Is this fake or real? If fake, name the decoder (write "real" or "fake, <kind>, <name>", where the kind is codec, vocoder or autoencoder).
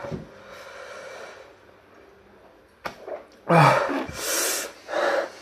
real